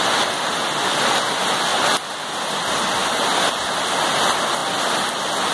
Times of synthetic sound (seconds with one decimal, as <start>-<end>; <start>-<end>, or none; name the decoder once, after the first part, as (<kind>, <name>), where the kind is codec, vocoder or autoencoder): none